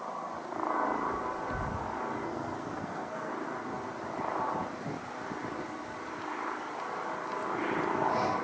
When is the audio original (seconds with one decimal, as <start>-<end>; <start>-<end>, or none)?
0.0-2.2; 3.3-8.4